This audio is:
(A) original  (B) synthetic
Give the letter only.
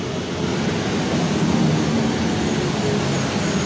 A